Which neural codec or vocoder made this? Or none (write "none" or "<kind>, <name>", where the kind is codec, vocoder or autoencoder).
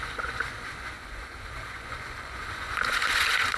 vocoder, Vocos